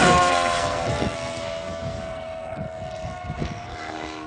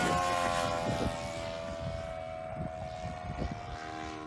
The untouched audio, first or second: second